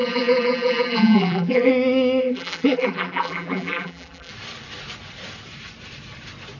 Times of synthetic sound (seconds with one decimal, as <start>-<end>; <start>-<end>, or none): 0.0-1.7; 2.2-4.3